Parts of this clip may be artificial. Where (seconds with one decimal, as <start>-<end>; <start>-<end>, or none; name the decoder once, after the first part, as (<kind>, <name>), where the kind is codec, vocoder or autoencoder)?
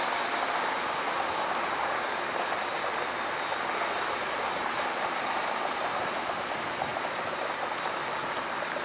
4.2-5.8 (vocoder, BigVGAN v2); 6.9-7.6